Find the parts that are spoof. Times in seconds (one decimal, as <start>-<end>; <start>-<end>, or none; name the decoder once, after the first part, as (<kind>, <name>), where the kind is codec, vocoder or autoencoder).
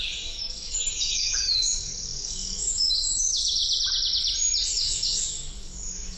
0.0-3.6 (codec, DAC); 4.7-6.2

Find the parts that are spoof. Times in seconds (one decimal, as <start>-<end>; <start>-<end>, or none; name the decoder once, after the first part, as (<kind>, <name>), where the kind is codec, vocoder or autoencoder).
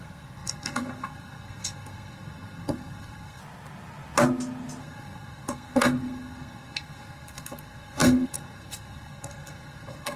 0.0-3.4 (codec, SNAC); 4.8-10.2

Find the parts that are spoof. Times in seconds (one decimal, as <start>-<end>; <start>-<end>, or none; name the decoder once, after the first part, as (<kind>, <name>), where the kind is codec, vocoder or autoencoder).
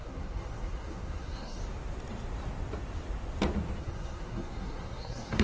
0.0-1.6 (codec, SNAC); 3.8-5.4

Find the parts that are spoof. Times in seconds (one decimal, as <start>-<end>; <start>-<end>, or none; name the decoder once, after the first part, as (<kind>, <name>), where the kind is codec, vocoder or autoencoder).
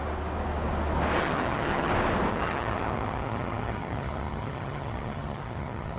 1.2-1.9 (vocoder, HiFi-GAN); 2.3-6.0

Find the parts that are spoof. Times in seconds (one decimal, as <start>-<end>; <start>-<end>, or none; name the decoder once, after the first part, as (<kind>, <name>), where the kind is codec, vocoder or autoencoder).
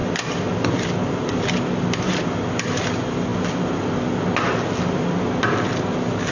none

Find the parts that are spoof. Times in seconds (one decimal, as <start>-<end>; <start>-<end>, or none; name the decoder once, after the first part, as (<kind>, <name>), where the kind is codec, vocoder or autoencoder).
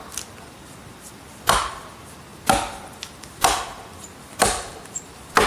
none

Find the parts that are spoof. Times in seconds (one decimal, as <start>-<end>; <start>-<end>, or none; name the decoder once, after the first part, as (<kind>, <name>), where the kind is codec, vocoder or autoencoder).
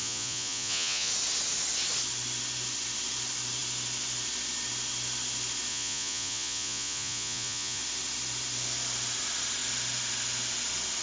0.0-1.1 (vocoder, Vocos); 5.7-7.8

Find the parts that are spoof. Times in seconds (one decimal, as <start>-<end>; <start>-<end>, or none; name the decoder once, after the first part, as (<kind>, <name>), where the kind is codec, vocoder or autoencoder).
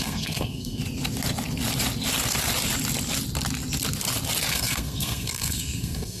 0.0-0.8 (codec, SNAC); 4.5-6.2